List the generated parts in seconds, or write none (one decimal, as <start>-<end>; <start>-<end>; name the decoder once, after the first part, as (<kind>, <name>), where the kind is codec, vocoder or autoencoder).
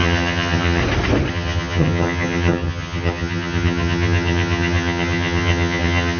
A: 0.0-0.8 (vocoder, HiFi-GAN); 1.3-6.2